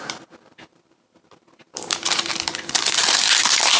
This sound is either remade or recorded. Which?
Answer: remade